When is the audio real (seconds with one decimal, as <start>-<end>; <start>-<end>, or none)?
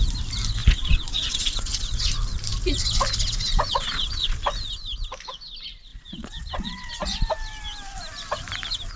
0.0-0.6; 2.1-3.7; 4.4-5.9; 7.2-9.0